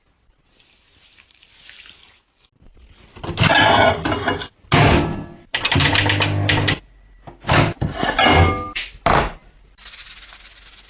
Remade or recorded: recorded